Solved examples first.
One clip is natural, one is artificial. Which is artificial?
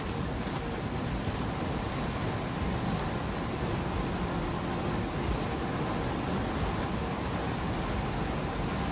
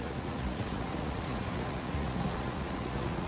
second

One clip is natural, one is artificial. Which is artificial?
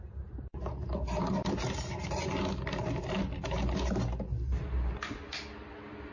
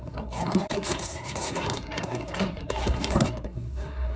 second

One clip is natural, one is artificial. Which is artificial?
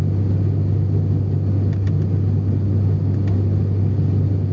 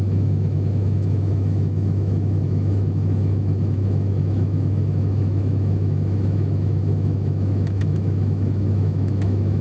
second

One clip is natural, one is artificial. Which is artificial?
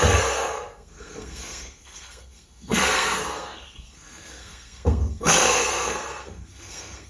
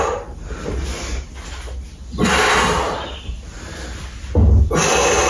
first